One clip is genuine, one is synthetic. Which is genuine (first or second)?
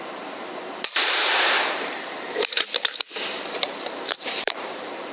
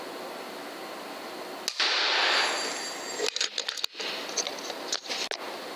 second